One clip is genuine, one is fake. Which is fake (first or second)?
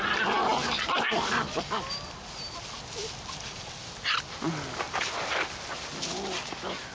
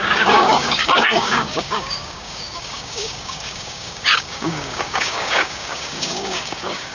second